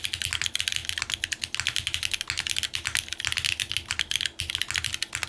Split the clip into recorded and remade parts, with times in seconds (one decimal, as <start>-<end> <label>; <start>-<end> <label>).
0.0-5.3 recorded